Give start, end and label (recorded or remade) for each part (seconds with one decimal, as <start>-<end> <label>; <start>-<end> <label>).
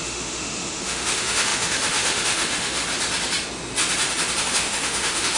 0.0-2.8 remade; 2.8-4.4 recorded; 4.4-5.4 remade